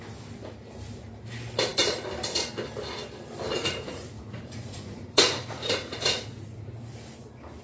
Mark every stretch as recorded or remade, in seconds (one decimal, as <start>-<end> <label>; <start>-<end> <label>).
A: 0.0-3.5 recorded; 3.5-6.7 remade; 6.7-7.6 recorded